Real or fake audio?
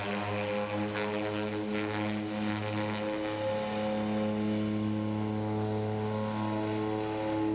real